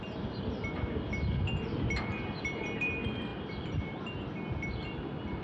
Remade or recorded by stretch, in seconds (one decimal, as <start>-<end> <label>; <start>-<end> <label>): 0.0-5.4 recorded